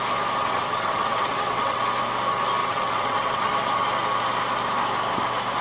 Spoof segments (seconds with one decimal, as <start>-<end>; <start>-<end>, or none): 0.4-1.8; 2.6-3.5